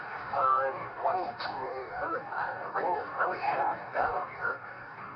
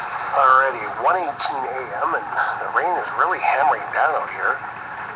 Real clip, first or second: second